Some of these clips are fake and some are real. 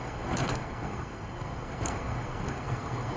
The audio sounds fake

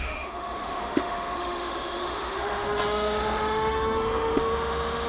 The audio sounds fake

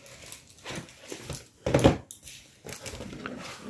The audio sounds real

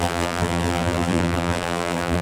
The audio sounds fake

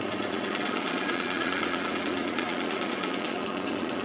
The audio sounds fake